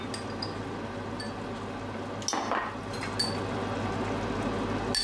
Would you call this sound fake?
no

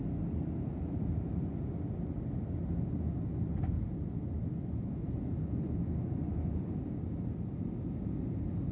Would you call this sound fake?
no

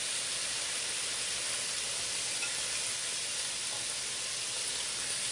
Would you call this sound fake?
no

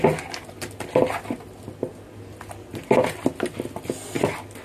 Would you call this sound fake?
no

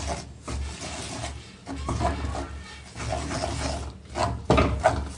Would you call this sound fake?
no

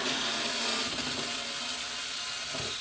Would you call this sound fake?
no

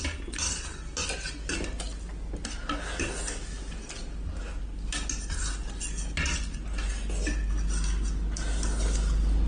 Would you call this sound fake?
no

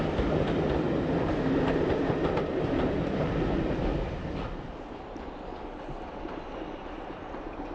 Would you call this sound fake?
no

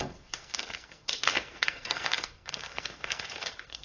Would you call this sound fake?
yes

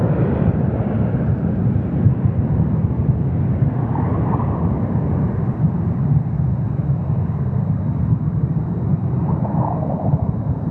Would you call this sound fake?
yes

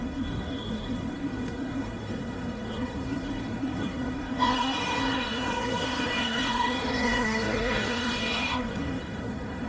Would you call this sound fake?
yes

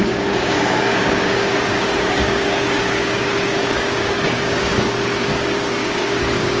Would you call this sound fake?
yes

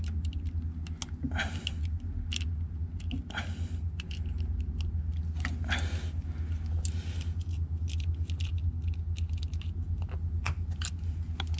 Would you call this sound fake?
no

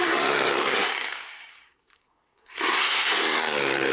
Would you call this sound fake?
yes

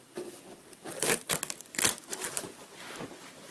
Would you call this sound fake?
no